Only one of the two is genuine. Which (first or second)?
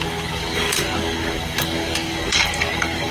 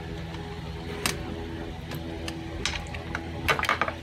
second